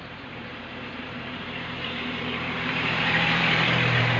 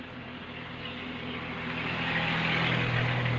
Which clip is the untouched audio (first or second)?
second